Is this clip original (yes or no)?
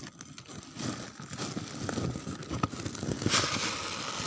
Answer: yes